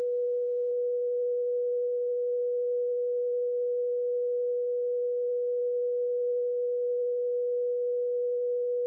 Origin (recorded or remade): remade